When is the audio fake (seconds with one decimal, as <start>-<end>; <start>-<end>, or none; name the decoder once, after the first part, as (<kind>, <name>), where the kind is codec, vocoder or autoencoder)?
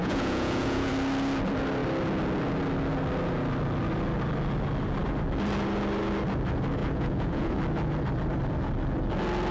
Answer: 0.0-0.9 (vocoder, Vocos); 6.8-7.6